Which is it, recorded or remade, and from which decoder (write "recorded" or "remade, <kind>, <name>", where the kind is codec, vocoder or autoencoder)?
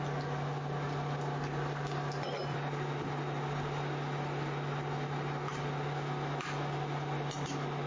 recorded